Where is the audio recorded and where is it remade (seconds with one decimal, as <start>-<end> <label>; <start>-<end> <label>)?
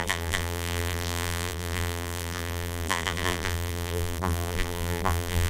0.0-5.5 remade